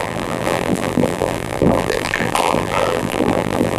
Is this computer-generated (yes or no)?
yes